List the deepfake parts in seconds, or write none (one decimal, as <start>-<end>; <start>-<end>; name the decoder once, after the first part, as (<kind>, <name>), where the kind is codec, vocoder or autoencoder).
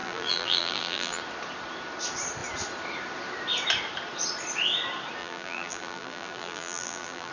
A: 0.0-1.2 (vocoder, BigVGAN v2); 5.2-7.3